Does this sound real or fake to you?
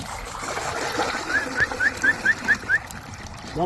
fake